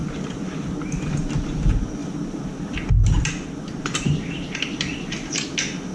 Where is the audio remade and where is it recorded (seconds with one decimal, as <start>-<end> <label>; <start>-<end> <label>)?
0.0-5.9 recorded